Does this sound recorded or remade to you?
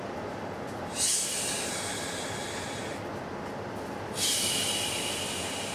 recorded